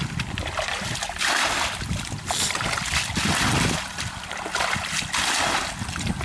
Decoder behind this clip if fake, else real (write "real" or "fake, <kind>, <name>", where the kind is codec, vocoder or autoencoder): real